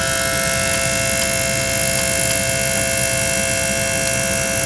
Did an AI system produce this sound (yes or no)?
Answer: no